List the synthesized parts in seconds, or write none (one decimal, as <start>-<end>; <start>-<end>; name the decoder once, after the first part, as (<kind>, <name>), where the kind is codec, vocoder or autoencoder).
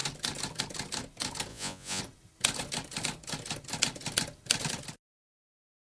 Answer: 1.5-2.0 (vocoder, Vocos)